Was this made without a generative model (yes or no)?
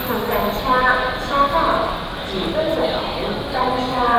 yes